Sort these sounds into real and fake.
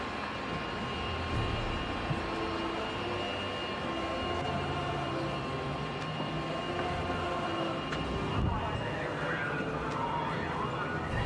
real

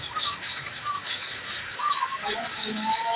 fake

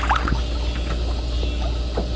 real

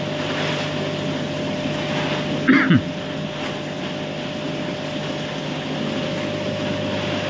real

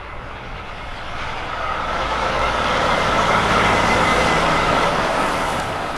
fake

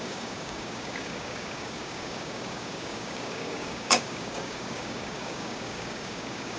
fake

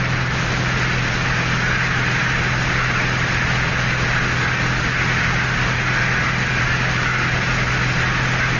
real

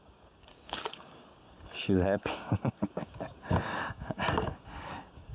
fake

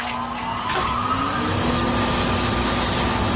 real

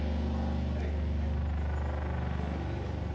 real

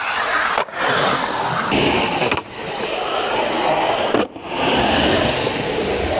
real